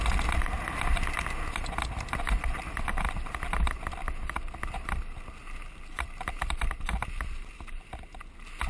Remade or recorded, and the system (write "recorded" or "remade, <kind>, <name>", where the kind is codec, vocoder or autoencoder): recorded